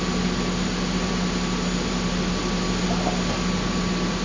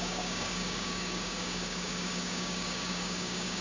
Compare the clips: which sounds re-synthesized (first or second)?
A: second